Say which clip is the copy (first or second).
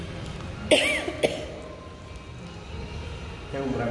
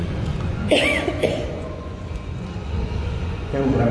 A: second